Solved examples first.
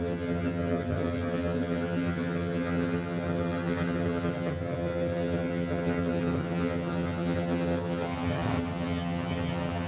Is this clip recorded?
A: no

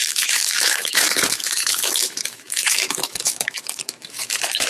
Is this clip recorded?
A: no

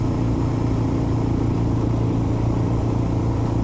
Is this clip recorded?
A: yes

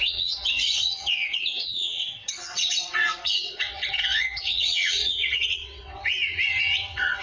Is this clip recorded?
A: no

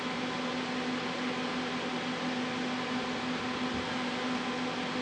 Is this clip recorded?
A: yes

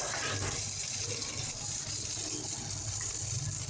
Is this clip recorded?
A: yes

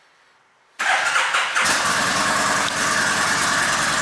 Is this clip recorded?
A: yes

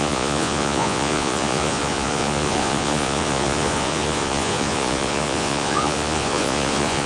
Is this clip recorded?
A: no